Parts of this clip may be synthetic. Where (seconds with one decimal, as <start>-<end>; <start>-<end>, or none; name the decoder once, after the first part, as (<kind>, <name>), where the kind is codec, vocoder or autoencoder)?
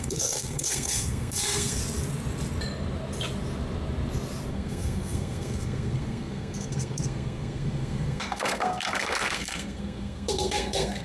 0.0-1.8 (codec, SNAC); 4.5-11.0